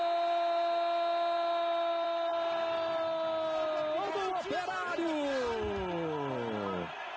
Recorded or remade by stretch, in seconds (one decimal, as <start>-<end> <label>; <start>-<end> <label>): 0.0-7.2 recorded